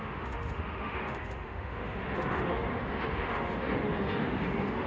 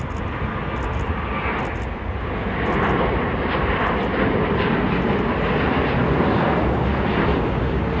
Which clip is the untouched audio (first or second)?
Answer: second